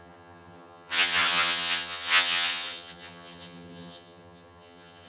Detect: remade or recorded remade